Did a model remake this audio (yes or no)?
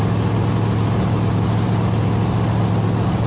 no